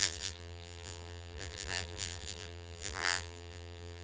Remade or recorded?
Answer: remade